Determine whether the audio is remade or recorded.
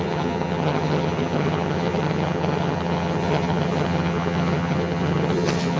remade